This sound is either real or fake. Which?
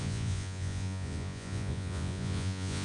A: fake